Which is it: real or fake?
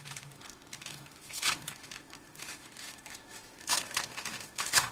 fake